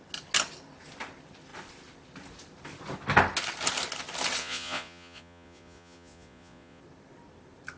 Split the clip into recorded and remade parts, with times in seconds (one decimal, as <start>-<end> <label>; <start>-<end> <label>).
0.0-4.4 recorded; 4.4-6.8 remade; 6.8-7.8 recorded